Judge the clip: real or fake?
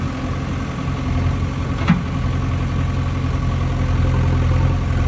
real